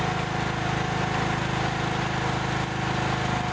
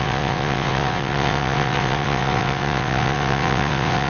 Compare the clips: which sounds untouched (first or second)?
first